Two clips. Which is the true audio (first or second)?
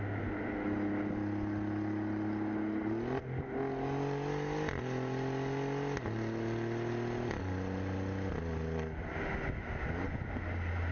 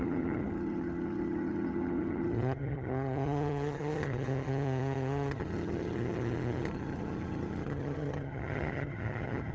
first